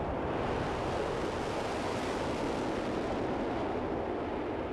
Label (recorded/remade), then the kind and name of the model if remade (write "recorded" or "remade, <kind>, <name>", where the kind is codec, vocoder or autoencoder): recorded